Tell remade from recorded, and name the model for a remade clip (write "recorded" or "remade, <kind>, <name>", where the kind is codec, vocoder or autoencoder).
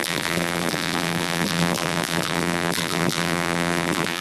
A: remade, vocoder, BigVGAN v2